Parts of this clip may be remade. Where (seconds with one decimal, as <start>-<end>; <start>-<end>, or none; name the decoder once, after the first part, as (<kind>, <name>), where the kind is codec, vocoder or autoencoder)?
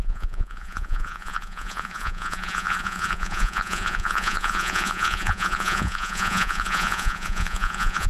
0.0-8.1 (vocoder, Vocos)